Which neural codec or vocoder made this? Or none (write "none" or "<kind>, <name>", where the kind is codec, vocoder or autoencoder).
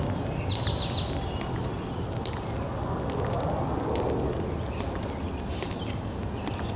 none